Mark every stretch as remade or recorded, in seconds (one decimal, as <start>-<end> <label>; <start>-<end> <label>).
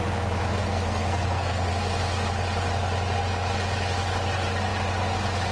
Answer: 0.0-0.6 recorded; 0.6-1.7 remade; 1.7-5.5 recorded